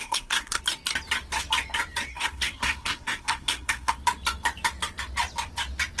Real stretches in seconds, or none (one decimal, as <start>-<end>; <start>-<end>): 0.6-2.1; 3.9-6.0